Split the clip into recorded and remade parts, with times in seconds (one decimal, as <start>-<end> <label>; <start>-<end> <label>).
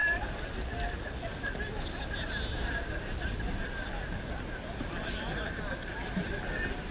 0.0-6.9 recorded